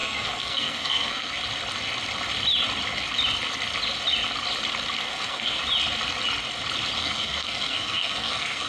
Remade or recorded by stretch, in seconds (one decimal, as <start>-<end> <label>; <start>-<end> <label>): 0.0-1.4 remade; 1.4-5.1 recorded; 5.1-5.6 remade; 5.6-7.0 recorded; 7.0-8.7 remade